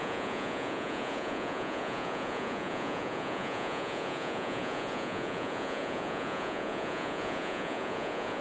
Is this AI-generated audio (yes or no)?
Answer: yes